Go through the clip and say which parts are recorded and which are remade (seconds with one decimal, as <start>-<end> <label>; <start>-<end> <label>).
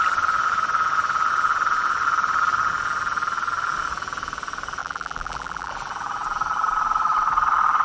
0.0-4.8 recorded; 4.8-5.7 remade; 5.7-7.8 recorded